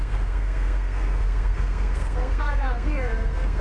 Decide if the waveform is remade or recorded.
remade